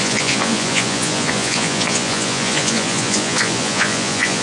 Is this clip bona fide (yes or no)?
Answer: no